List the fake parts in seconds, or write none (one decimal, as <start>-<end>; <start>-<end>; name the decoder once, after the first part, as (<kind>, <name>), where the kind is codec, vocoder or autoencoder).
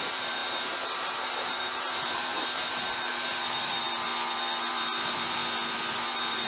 0.0-4.1 (vocoder, BigVGAN v2); 4.7-5.4; 5.9-6.5